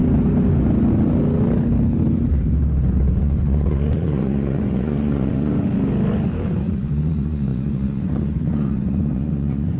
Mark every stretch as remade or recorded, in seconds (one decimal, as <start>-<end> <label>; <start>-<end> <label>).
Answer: 0.0-3.2 recorded; 3.2-5.5 remade; 5.5-6.6 recorded; 6.6-9.8 remade

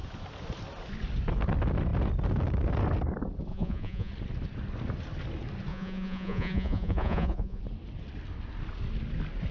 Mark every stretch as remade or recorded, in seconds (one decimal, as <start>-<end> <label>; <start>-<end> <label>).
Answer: 0.0-3.5 recorded; 3.5-4.1 remade; 4.1-5.7 recorded; 5.7-7.6 remade; 7.6-9.5 recorded